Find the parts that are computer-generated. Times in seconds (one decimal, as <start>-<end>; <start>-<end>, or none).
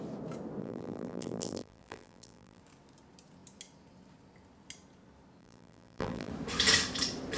0.6-2.6; 5.4-6.3